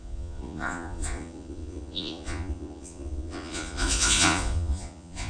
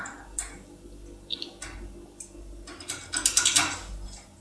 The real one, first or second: second